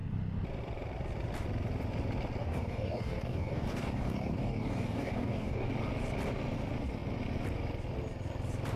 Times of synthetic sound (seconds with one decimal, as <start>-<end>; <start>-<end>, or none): 2.4-5.7